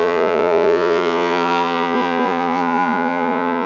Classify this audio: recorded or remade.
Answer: remade